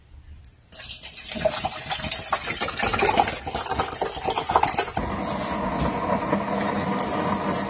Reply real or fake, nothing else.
real